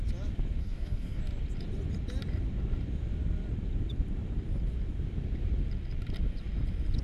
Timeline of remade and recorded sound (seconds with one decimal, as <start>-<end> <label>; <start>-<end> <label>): 0.0-0.6 recorded; 0.6-1.2 remade; 1.2-7.0 recorded